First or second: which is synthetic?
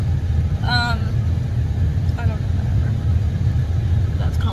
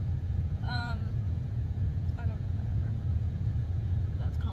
second